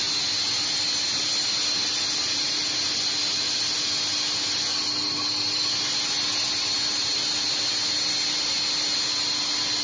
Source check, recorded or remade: recorded